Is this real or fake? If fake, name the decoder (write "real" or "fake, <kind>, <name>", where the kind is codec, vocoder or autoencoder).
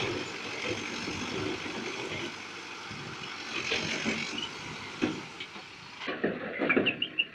real